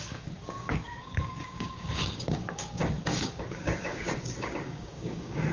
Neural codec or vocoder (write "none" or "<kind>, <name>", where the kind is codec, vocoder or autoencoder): codec, DAC